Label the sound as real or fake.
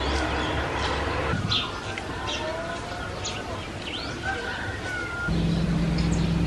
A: real